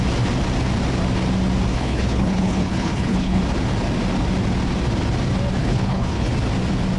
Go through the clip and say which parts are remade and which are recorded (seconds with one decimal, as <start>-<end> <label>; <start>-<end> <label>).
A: 0.0-1.7 recorded; 1.7-3.4 remade; 3.4-5.6 recorded; 5.6-6.3 remade; 6.3-7.0 recorded